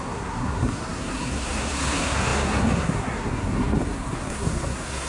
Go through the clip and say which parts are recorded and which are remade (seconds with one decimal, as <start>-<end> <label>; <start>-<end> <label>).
0.0-5.1 remade